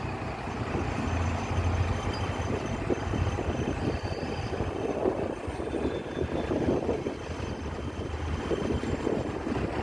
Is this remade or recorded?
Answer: recorded